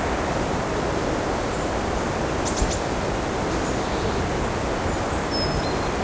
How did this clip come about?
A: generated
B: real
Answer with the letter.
B